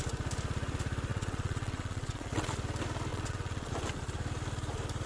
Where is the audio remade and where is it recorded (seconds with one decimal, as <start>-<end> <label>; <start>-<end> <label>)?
0.0-1.1 recorded; 1.1-2.5 remade; 2.5-3.1 recorded; 3.1-3.7 remade; 3.7-5.1 recorded